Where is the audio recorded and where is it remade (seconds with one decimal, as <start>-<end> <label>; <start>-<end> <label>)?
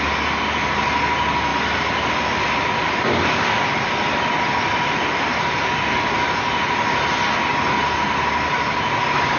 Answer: 0.0-1.5 recorded; 1.5-2.1 remade; 2.1-9.4 recorded